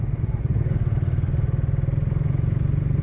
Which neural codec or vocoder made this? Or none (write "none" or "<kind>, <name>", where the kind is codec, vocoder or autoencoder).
none